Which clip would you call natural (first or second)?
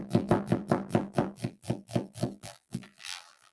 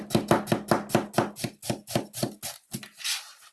second